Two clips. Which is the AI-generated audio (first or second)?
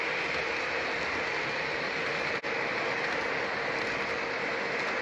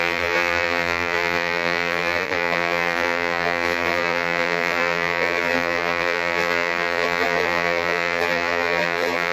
second